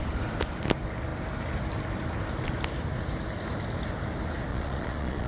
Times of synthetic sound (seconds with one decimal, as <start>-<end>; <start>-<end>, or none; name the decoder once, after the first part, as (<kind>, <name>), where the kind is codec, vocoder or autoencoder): 4.5-5.3 (vocoder, Vocos)